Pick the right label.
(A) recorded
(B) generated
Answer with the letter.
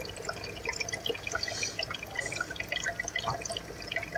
A